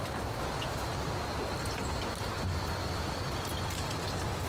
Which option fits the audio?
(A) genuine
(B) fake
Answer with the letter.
A